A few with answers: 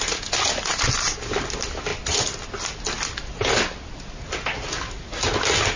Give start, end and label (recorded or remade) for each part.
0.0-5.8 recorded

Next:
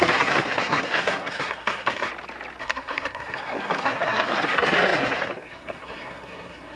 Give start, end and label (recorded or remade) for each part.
0.0-2.1 remade; 2.1-2.6 recorded; 2.6-6.8 remade

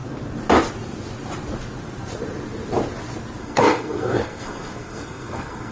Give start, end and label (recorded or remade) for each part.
0.0-3.4 recorded; 3.4-5.7 remade

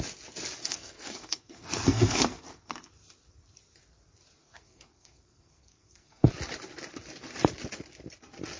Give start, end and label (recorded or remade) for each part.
0.0-0.6 recorded; 0.6-2.9 remade; 2.9-4.4 recorded; 4.4-6.3 remade; 6.3-8.6 recorded

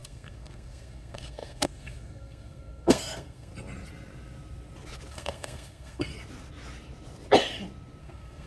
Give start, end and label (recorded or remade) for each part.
0.0-3.5 remade; 3.5-5.1 recorded; 5.1-6.1 remade; 6.1-8.0 recorded; 8.0-8.5 remade

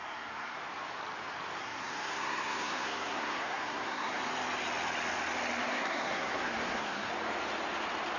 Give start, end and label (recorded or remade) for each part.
0.0-0.6 remade; 0.6-1.6 recorded; 1.6-4.2 remade; 4.2-5.6 recorded; 5.6-7.1 remade; 7.1-8.2 recorded